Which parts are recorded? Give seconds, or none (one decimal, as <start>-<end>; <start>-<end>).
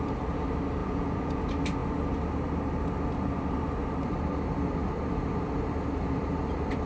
0.0-0.8; 1.4-6.9